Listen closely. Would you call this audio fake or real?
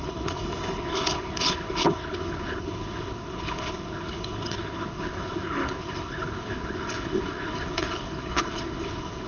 fake